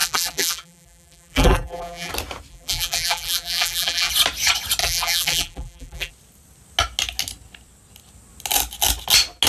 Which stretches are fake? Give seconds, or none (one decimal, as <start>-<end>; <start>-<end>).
0.0-2.1; 2.5-4.1; 4.8-6.1